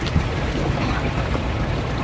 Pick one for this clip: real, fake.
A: real